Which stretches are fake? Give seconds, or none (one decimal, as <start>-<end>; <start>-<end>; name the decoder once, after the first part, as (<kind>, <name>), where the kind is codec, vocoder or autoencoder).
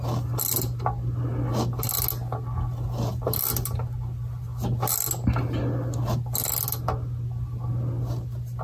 none